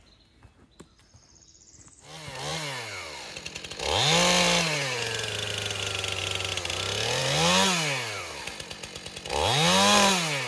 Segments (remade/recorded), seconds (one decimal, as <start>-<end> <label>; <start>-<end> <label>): 0.0-10.5 recorded